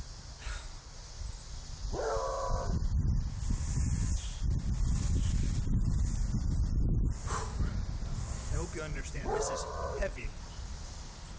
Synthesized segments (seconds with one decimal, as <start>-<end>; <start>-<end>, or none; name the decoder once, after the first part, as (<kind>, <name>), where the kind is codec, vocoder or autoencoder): 8.9-10.4 (vocoder, WaveNeXt)